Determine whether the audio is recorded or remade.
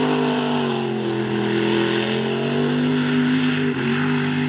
recorded